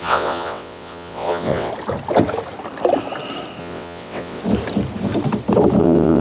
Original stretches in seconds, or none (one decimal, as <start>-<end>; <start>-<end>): 1.7-3.6; 4.4-5.8